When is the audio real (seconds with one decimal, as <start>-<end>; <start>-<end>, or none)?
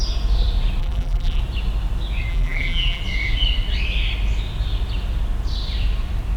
0.0-0.8; 1.4-2.3; 3.0-6.4